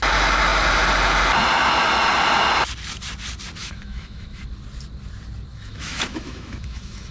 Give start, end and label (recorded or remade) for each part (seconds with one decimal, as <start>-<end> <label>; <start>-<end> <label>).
0.0-3.6 recorded; 3.6-4.4 remade; 4.4-5.5 recorded; 5.5-7.1 remade